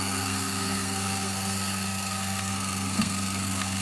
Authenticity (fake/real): fake